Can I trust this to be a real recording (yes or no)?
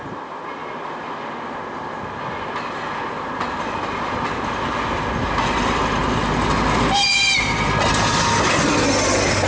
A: yes